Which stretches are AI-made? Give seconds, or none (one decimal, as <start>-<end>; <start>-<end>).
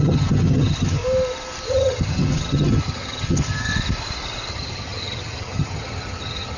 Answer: 0.0-1.0; 1.7-3.7; 4.5-6.6